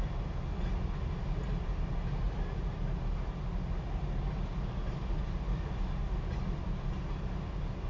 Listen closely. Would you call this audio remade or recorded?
recorded